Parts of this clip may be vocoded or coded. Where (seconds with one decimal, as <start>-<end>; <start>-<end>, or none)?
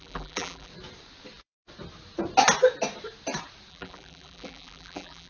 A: 0.0-0.7; 3.7-5.3